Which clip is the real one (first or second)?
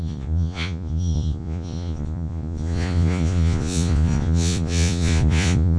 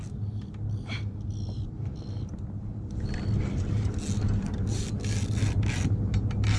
second